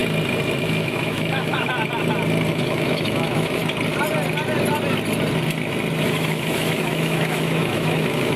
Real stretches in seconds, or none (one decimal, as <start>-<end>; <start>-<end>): 0.0-0.6; 1.7-2.5; 3.6-6.0